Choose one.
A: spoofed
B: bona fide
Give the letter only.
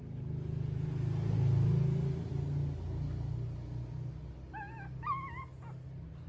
B